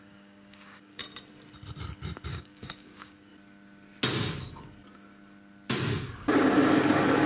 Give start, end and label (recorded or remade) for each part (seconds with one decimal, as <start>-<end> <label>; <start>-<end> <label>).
0.0-1.0 remade; 1.0-2.3 recorded; 2.3-3.3 remade; 3.3-5.7 recorded; 5.7-7.3 remade

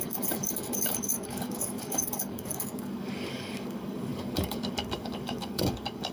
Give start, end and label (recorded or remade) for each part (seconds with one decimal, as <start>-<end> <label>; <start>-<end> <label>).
0.0-6.1 remade